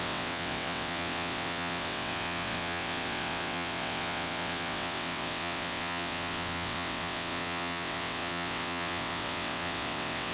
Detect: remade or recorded remade